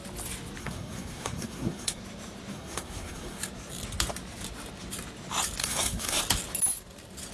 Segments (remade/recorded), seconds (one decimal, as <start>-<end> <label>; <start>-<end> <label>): 0.0-0.6 recorded; 0.6-2.0 remade; 2.0-2.5 recorded; 2.5-3.4 remade; 3.4-5.6 recorded; 5.6-6.2 remade; 6.2-7.3 recorded